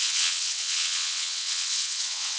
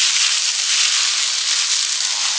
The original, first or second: second